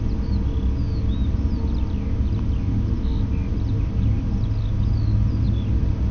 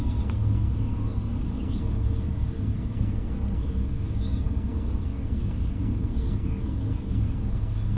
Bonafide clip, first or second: first